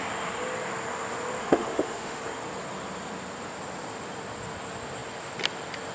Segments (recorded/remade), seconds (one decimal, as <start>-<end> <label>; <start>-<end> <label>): 0.0-1.4 recorded; 1.4-2.2 remade; 2.2-5.9 recorded